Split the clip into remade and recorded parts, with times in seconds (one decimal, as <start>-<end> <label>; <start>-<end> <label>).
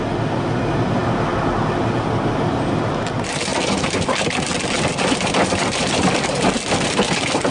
0.0-7.5 recorded